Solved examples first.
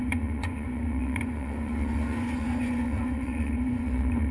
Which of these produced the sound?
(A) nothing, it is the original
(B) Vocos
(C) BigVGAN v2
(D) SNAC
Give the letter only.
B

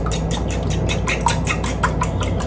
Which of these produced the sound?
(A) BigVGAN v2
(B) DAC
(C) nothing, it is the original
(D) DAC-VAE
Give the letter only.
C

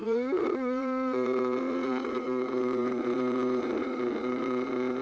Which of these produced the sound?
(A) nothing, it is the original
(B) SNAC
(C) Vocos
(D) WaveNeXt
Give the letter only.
C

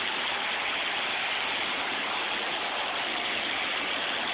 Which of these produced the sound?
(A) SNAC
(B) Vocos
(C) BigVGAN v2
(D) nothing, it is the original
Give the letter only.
C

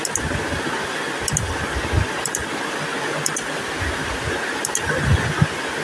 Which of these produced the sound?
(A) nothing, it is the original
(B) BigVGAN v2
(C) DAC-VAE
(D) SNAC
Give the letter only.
A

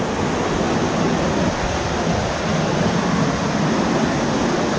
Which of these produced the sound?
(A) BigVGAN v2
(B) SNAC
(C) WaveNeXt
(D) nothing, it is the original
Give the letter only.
D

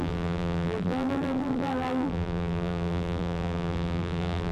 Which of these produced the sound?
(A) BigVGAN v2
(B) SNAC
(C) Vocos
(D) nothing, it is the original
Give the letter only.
A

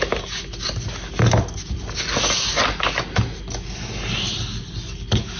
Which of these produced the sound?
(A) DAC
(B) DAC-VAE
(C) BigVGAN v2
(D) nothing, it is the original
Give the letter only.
D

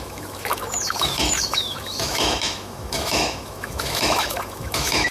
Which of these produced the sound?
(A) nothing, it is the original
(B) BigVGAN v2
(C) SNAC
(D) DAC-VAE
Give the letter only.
D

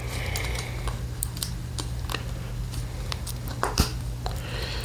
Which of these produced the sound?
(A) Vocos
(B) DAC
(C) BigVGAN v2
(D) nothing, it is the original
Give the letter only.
C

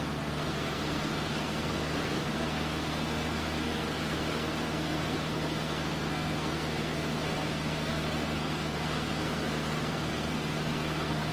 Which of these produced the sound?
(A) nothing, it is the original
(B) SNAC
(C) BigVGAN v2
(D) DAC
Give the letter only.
B